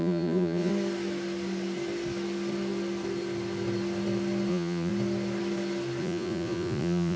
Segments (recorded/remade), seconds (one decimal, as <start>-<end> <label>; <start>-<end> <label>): 0.0-0.7 remade; 0.7-4.5 recorded; 4.5-4.9 remade; 4.9-6.0 recorded; 6.0-7.2 remade

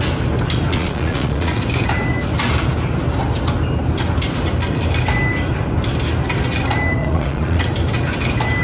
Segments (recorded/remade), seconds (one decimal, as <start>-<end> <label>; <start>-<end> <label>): 0.0-0.7 recorded; 0.7-1.6 remade; 1.6-7.0 recorded; 7.0-7.6 remade; 7.6-8.6 recorded